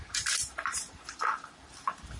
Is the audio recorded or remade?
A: remade